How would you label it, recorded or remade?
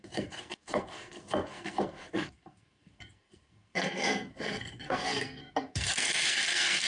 remade